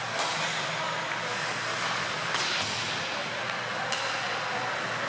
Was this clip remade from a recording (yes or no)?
no